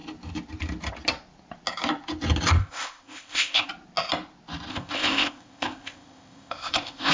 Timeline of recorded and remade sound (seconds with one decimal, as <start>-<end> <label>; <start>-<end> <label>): 0.0-2.6 recorded; 2.6-3.7 remade; 3.7-4.7 recorded; 4.7-7.1 remade